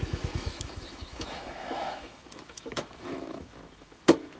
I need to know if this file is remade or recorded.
remade